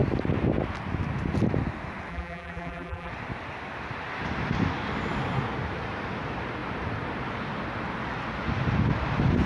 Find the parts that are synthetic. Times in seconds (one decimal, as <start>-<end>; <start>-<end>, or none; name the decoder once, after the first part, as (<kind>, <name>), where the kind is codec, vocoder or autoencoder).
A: 2.1-3.1 (vocoder, BigVGAN v2)